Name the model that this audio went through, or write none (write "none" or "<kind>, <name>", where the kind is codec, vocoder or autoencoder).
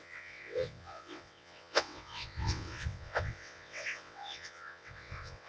vocoder, WaveNeXt